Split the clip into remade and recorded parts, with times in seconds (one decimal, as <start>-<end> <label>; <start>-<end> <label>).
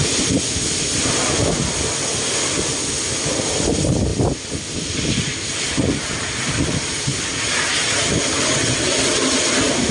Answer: 0.0-9.9 recorded